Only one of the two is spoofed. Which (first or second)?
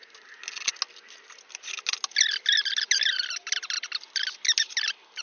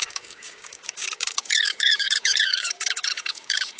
second